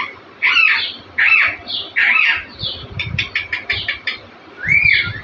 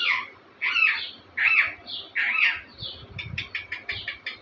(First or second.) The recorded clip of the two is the second